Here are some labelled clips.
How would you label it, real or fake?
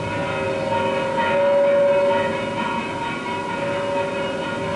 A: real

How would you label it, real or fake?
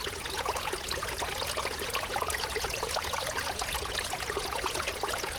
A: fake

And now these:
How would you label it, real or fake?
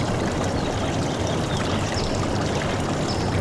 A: real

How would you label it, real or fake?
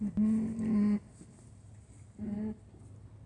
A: real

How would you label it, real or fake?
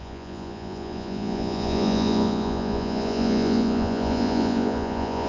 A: fake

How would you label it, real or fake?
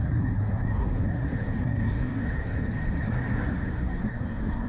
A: fake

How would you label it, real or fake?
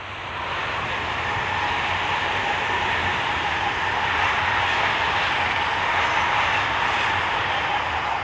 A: real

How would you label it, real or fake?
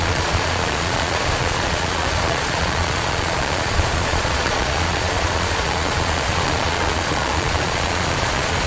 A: fake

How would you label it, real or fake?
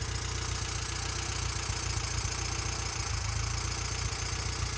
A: real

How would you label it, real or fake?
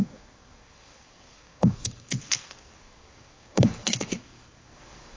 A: fake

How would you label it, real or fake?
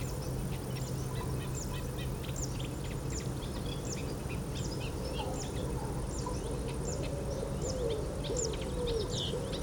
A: real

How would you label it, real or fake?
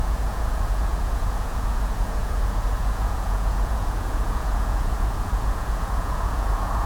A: fake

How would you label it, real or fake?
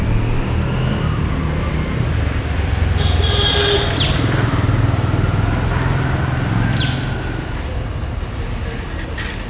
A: real